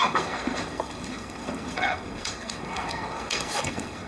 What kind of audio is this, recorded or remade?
remade